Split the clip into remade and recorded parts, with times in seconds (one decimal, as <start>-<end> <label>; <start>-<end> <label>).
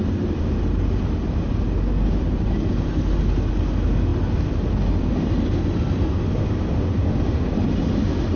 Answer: 0.0-8.4 recorded